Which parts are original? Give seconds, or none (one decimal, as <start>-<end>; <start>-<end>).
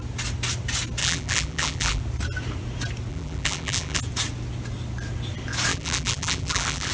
0.0-1.0; 2.0-3.1; 4.0-5.7